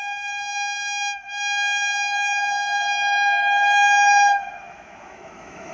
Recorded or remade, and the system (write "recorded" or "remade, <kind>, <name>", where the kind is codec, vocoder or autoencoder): remade, autoencoder, DAC-VAE